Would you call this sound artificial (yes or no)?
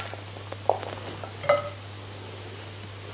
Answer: no